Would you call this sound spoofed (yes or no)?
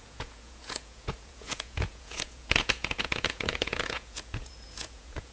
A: yes